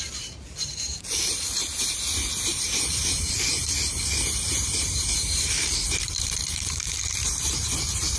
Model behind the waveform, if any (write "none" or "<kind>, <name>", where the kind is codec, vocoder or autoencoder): vocoder, BigVGAN v2